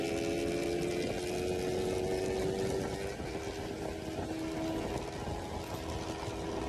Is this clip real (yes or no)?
yes